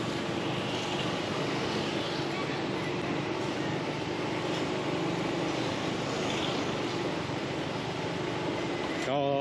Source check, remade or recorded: recorded